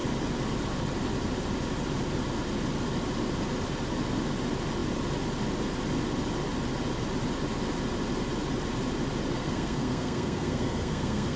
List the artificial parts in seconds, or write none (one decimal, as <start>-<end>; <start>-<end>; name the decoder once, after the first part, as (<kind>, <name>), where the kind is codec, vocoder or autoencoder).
9.3-11.4 (codec, SNAC)